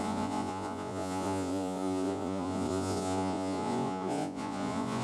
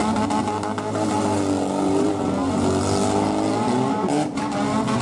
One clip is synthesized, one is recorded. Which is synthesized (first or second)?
first